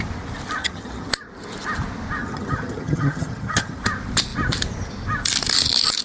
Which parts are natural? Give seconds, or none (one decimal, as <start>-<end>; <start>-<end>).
0.0-0.6; 1.1-2.2; 3.8-6.0